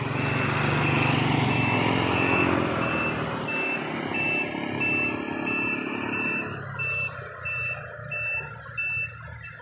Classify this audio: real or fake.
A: real